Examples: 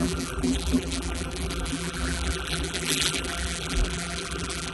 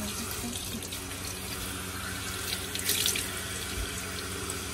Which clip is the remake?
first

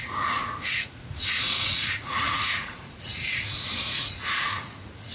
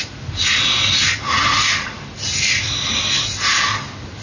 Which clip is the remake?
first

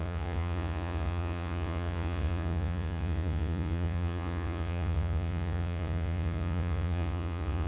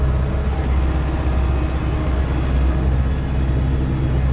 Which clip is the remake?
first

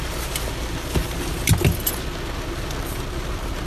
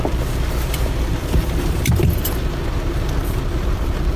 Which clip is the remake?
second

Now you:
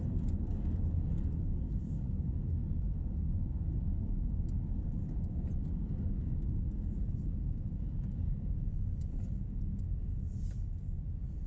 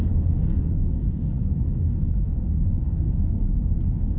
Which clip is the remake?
second